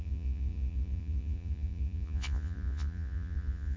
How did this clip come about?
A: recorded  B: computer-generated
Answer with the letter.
B